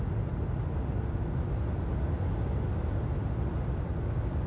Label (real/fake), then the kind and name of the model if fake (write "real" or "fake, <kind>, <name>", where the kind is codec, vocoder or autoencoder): real